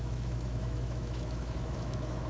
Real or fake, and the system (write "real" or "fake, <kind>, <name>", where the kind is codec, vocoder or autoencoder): fake, autoencoder, DAC-VAE